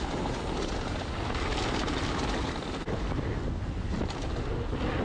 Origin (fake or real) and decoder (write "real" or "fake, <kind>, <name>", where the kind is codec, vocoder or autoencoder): real